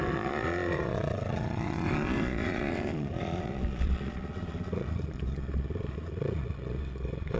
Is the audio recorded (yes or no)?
no